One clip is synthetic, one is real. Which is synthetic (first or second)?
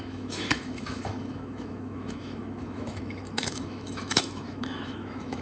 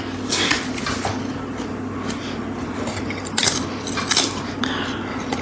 first